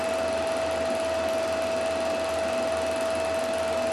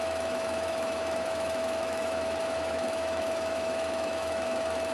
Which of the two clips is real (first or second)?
first